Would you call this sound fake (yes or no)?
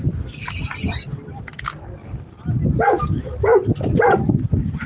no